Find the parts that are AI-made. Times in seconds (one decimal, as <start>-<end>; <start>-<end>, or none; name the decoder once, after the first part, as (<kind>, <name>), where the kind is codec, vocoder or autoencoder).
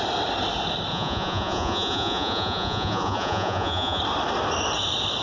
0.9-4.0 (vocoder, Vocos)